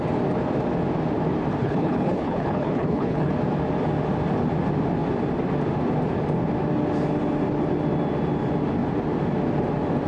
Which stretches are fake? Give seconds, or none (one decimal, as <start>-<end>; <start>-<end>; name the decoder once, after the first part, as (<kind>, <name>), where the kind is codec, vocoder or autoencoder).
1.6-3.3 (codec, HILCodec)